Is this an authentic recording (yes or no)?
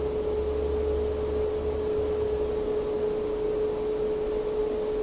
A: yes